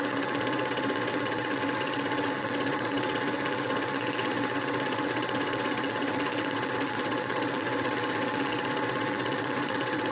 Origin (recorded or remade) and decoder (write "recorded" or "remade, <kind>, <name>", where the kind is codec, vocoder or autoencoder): remade, vocoder, WaveNeXt